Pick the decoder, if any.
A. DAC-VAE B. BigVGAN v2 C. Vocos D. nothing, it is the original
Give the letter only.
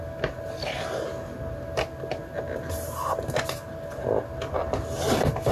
D